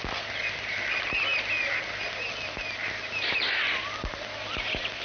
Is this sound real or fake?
real